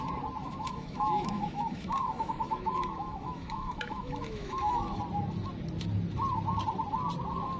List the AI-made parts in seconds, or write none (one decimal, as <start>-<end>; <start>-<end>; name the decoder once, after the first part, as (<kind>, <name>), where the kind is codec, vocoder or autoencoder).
0.4-5.0 (autoencoder, DAC-VAE)